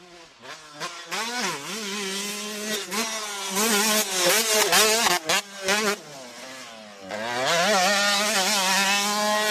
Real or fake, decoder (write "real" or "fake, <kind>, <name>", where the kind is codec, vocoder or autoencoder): real